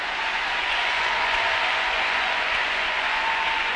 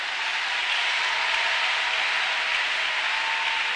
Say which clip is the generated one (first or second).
first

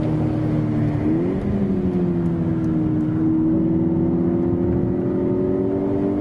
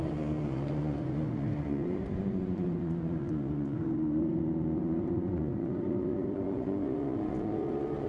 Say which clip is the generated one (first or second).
second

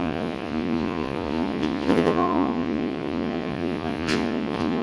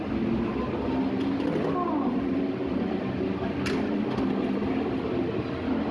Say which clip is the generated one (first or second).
first